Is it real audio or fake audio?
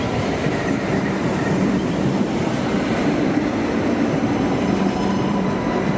fake